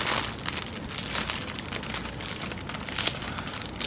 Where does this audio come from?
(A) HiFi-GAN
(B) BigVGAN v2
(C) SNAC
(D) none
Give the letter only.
D